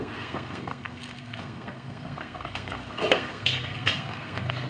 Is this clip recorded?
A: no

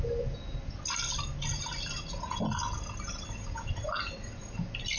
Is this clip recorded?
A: yes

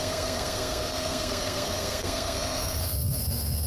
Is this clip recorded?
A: no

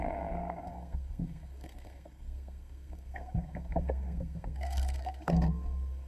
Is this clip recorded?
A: no